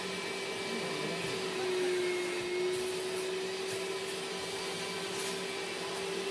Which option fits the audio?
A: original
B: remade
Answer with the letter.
A